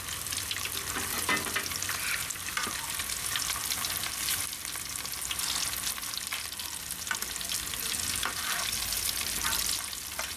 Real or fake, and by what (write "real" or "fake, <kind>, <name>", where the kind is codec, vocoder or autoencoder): real